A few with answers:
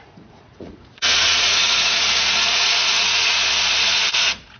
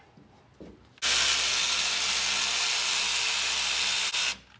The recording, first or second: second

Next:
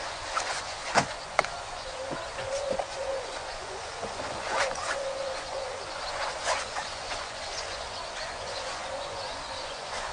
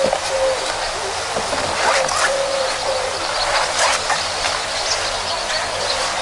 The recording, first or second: second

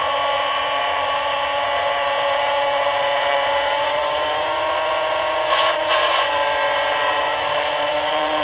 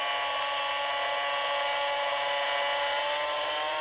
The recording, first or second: second